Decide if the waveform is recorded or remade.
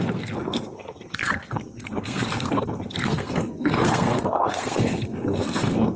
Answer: remade